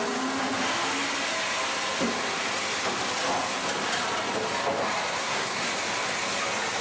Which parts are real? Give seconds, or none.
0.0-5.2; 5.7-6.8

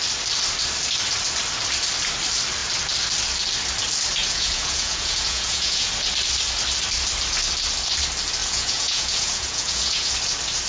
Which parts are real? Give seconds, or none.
0.0-4.2; 5.9-8.4; 10.1-10.7

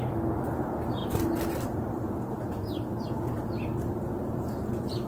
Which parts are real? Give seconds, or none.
0.0-5.1

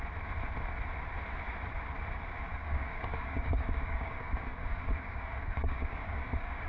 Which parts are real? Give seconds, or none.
0.0-2.6